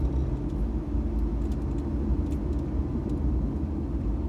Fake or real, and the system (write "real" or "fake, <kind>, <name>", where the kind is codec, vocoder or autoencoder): real